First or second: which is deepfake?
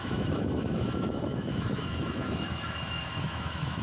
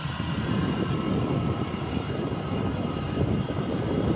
first